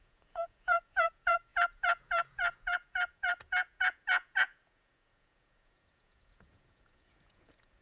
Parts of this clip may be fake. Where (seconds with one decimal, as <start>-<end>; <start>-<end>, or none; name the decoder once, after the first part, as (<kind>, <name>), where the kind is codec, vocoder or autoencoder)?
0.0-7.8 (vocoder, Vocos)